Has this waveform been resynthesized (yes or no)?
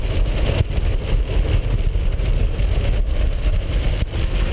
no